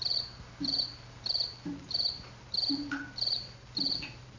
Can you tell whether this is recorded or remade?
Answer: remade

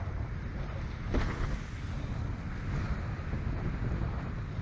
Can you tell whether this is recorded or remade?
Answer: recorded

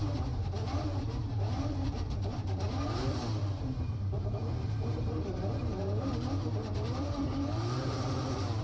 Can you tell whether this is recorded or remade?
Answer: remade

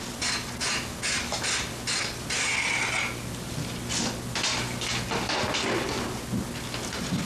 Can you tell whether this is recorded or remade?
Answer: recorded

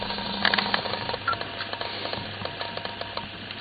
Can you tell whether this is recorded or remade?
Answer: recorded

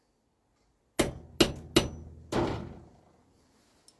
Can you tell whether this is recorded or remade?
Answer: recorded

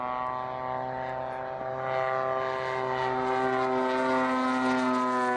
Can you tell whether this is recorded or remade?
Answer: recorded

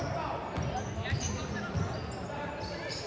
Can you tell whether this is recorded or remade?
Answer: recorded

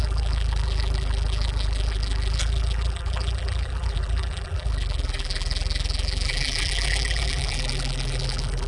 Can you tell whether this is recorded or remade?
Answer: remade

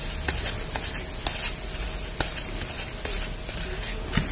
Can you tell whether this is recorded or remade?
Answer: recorded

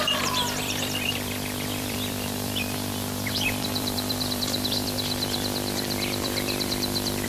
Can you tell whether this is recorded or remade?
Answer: remade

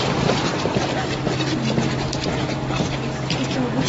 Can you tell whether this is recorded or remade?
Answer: recorded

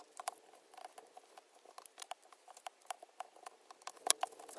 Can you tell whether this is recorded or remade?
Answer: remade